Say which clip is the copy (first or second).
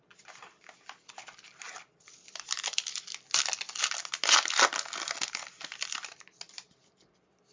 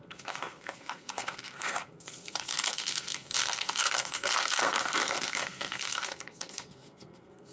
second